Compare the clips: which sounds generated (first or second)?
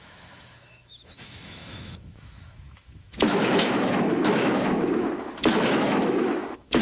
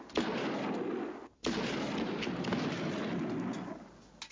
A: first